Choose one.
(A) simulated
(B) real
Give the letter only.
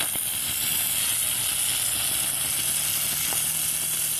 B